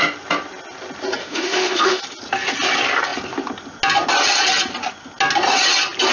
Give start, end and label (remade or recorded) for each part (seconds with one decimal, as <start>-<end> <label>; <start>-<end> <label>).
0.0-1.2 recorded; 1.2-2.0 remade; 2.0-6.1 recorded